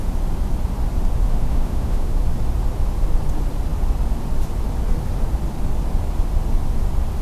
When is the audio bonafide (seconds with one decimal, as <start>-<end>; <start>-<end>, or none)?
0.0-1.3; 2.2-7.2